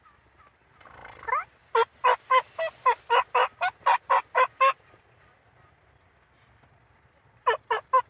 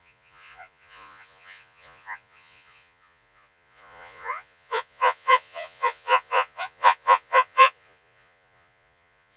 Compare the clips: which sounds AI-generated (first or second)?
second